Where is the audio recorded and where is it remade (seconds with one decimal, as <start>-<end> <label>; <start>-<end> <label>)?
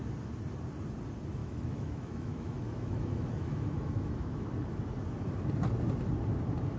0.0-1.4 recorded; 1.4-4.5 remade; 4.5-6.8 recorded